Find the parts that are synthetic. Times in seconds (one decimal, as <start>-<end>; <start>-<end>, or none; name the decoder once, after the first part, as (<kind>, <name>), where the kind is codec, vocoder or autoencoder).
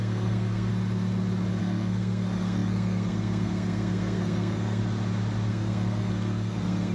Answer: 0.0-0.7 (codec, SNAC); 1.6-4.8; 5.5-6.9